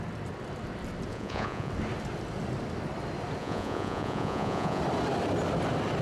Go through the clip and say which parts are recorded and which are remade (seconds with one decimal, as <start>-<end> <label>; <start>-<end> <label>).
0.0-1.1 recorded; 1.1-1.7 remade; 1.7-3.4 recorded; 3.4-4.8 remade; 4.8-6.0 recorded